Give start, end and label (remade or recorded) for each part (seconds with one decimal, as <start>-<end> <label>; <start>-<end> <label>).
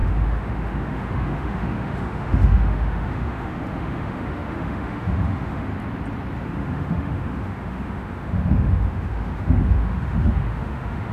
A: 0.0-5.7 remade; 5.7-6.4 recorded; 6.4-11.1 remade